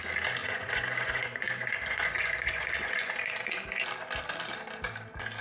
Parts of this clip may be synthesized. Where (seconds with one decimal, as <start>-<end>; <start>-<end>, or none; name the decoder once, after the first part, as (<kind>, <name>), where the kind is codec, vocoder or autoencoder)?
0.4-3.6 (vocoder, Vocos)